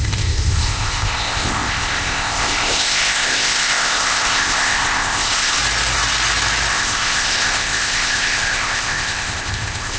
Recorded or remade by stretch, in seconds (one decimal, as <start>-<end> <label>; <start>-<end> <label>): 0.0-5.6 remade; 5.6-6.7 recorded; 6.7-10.0 remade